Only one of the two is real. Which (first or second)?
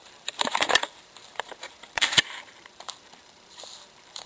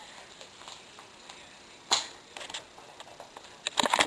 second